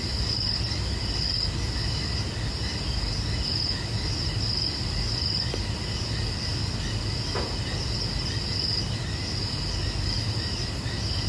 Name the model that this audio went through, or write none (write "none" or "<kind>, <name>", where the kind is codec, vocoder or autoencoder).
none